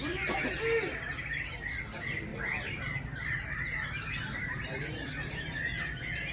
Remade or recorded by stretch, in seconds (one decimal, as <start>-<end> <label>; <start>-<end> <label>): 0.0-2.3 recorded; 2.3-4.9 remade; 4.9-6.3 recorded